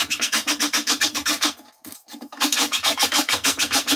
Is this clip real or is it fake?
fake